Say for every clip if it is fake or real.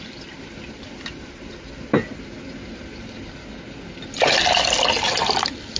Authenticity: real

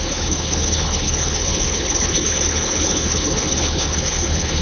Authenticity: fake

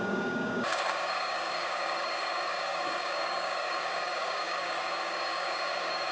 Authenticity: fake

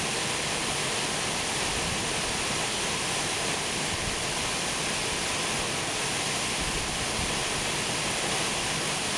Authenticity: real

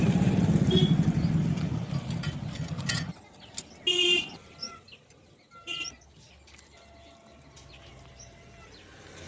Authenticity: real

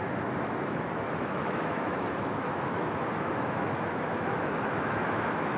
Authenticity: fake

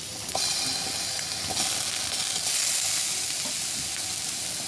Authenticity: real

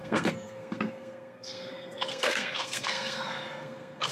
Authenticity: fake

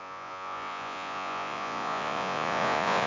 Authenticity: fake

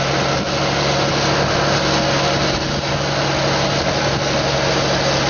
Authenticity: real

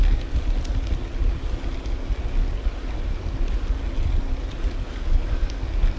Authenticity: real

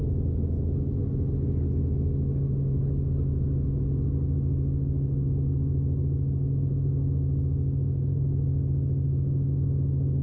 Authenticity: real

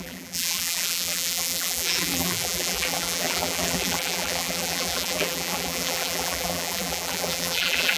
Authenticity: fake